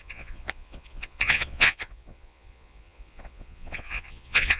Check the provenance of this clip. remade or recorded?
remade